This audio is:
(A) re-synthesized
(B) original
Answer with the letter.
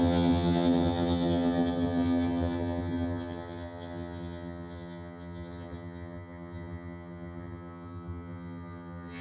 A